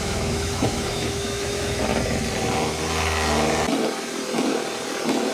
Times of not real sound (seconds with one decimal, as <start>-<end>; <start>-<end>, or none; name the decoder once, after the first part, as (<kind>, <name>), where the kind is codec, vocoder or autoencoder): 0.0-1.9 (autoencoder, DAC-VAE)

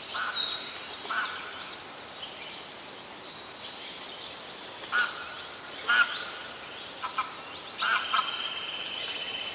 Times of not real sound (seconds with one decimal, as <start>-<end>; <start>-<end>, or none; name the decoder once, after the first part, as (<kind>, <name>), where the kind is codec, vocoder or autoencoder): none

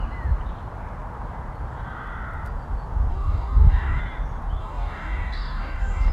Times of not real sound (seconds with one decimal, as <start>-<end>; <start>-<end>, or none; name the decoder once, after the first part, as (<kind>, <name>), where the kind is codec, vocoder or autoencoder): 3.1-4.0 (codec, DAC); 4.6-6.1

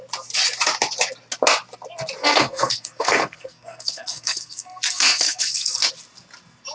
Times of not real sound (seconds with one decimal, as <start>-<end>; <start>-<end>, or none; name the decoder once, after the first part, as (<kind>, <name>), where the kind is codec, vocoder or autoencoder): 2.2-5.9 (codec, SNAC)

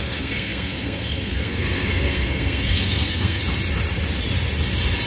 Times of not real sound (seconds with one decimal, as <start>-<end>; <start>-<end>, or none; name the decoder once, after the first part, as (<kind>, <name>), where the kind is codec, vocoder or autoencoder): 0.0-3.4 (codec, SNAC)